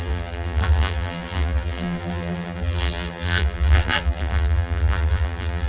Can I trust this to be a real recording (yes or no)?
no